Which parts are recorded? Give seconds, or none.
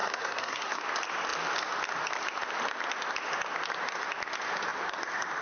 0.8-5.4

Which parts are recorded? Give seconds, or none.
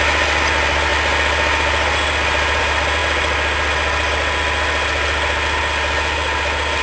0.0-6.8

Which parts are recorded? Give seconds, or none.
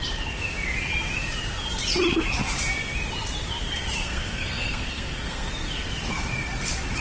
0.0-4.0; 5.5-7.0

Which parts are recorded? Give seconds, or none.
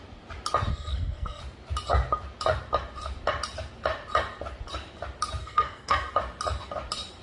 0.0-0.7; 1.4-5.4; 6.1-7.2